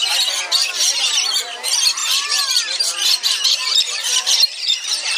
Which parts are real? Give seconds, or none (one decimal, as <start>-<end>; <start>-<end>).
0.0-0.6; 1.4-2.0